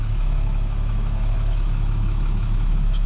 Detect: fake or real fake